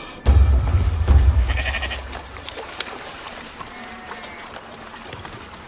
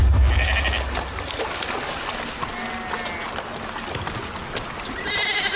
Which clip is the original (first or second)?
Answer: second